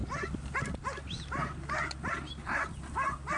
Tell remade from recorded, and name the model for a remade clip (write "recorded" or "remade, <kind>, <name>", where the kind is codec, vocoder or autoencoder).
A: recorded